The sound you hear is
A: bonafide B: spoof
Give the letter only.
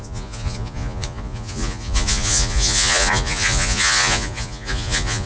B